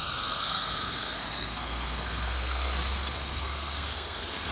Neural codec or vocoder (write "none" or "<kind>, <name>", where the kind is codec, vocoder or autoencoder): codec, SNAC